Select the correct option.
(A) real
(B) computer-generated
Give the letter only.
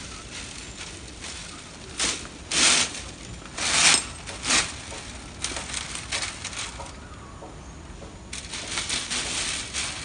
A